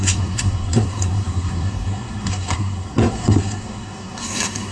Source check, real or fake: fake